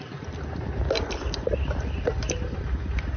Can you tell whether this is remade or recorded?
recorded